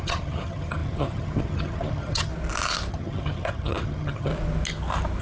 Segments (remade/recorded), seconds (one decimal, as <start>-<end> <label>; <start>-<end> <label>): 0.0-2.3 remade; 2.3-2.9 recorded; 2.9-4.3 remade; 4.3-5.2 recorded

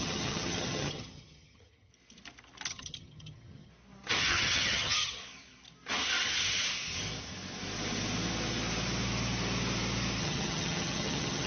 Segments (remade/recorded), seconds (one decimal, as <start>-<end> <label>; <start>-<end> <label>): 0.0-1.9 remade; 1.9-2.7 recorded; 2.7-3.7 remade; 3.7-4.2 recorded; 4.2-5.2 remade; 5.2-10.2 recorded; 10.2-11.5 remade

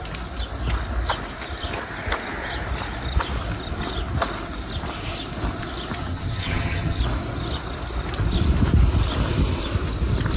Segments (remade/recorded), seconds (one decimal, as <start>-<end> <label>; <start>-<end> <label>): 0.0-6.0 recorded; 6.0-7.0 remade; 7.0-10.4 recorded